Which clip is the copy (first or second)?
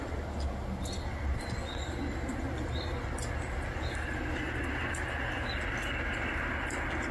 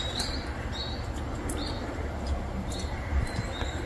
second